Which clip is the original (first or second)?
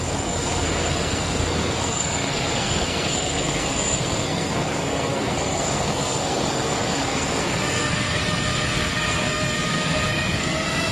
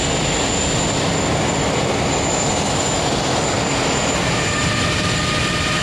second